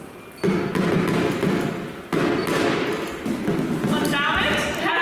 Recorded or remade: recorded